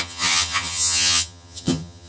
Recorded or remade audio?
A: remade